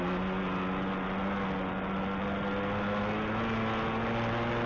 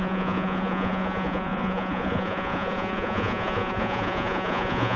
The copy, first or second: second